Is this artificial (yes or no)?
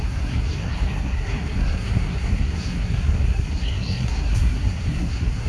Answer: yes